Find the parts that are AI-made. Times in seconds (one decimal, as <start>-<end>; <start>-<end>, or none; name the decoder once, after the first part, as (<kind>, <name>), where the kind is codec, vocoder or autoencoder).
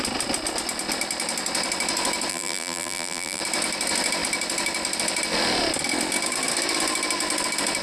2.3-3.4 (vocoder, BigVGAN v2)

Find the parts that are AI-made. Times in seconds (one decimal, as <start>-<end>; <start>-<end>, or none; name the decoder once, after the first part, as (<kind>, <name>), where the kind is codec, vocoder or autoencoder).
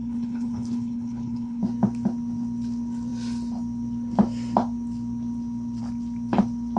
0.0-1.6 (codec, HILCodec)